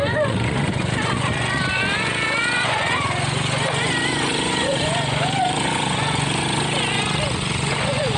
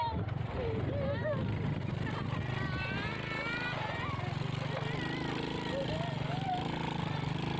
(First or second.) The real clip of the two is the second